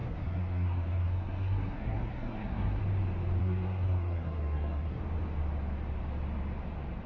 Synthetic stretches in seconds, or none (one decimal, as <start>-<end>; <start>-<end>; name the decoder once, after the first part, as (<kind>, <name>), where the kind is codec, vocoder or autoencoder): 0.0-2.8 (codec, SNAC); 3.4-5.0